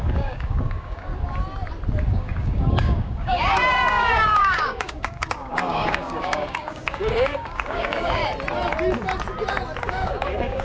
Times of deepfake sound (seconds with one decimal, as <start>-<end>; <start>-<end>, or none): 0.0-1.1; 2.1-8.2; 9.8-10.6